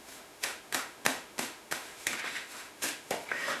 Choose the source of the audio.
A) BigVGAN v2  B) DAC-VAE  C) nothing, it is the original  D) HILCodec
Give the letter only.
B